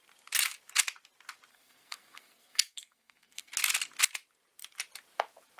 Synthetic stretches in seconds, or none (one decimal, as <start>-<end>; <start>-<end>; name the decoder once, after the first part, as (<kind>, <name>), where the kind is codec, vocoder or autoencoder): 1.5-3.5 (codec, SNAC)